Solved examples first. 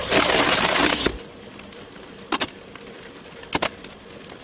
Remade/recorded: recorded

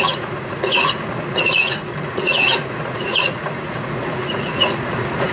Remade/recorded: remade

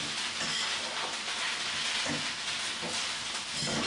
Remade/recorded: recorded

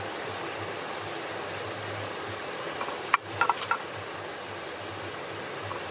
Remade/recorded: recorded